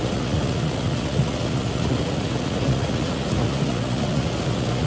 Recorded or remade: remade